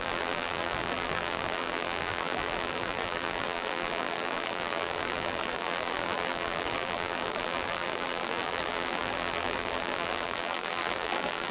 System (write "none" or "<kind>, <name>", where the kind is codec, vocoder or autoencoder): vocoder, BigVGAN v2